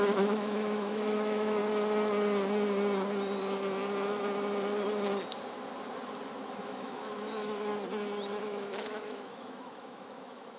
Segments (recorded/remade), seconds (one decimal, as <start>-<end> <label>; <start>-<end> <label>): 0.0-1.6 remade; 1.6-6.6 recorded; 6.6-7.7 remade; 7.7-8.4 recorded; 8.4-10.6 remade